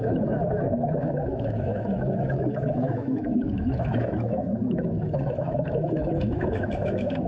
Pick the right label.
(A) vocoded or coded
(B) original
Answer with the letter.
A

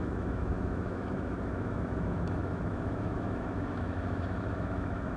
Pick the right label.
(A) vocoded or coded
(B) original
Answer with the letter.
A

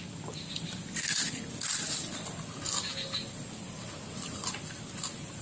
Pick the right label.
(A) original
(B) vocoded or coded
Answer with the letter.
A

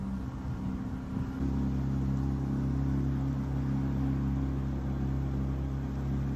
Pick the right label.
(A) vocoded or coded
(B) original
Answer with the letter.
B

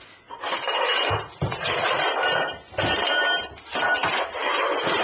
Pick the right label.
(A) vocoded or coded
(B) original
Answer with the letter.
B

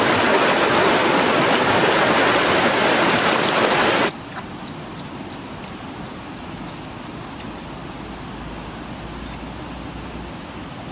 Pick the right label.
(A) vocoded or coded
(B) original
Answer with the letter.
B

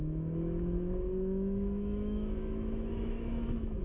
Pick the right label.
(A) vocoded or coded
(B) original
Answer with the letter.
A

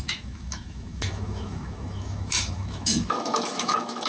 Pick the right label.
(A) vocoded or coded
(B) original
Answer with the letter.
A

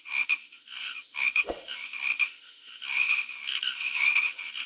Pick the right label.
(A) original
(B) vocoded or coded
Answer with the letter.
B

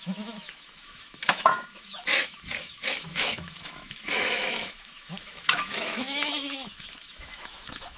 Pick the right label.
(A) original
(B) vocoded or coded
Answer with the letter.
B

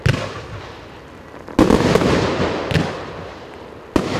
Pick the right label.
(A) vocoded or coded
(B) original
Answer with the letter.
B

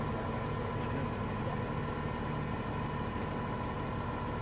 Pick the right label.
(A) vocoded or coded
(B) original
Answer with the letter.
B